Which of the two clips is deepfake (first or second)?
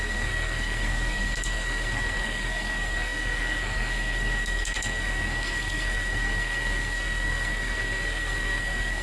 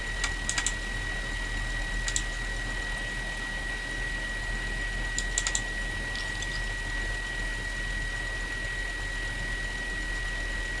first